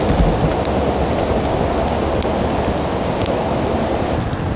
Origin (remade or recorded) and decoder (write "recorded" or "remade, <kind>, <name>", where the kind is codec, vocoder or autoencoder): recorded